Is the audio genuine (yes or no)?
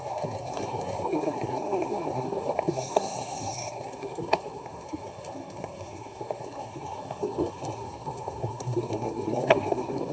no